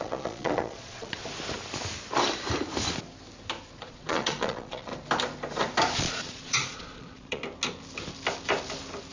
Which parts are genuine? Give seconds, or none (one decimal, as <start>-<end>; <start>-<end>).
1.2-3.8; 4.9-6.0; 7.4-9.1